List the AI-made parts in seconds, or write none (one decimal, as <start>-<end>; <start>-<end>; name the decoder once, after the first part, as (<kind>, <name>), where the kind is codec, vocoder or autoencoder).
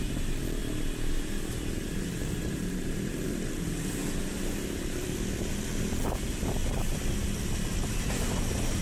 0.0-0.6 (vocoder, BigVGAN v2); 2.0-4.0; 5.4-6.6; 8.4-8.8